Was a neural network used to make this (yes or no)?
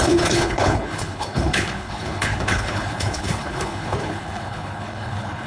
yes